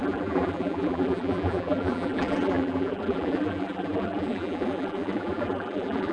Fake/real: fake